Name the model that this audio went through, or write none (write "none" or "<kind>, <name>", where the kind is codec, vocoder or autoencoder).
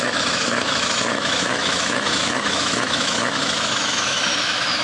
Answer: autoencoder, DAC-VAE